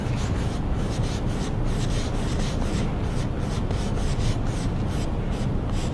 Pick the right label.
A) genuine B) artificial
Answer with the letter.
A